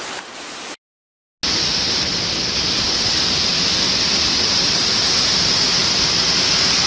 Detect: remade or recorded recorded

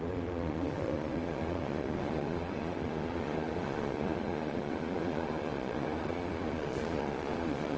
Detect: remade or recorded remade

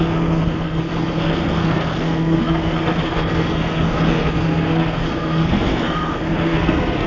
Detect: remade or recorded remade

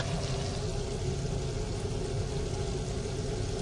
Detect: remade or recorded recorded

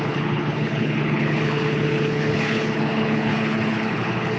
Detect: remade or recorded remade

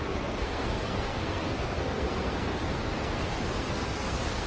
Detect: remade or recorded remade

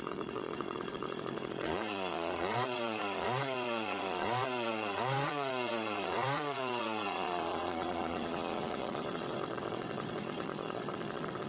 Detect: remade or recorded remade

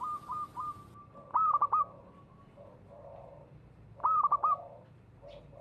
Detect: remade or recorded recorded